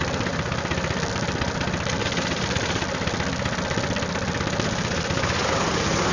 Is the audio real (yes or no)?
yes